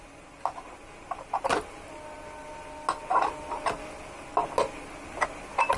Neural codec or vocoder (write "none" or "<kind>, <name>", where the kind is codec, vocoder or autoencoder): none